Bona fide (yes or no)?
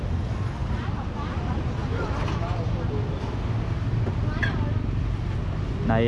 yes